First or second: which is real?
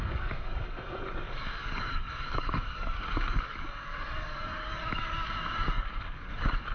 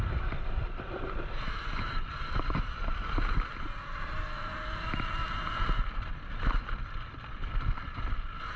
second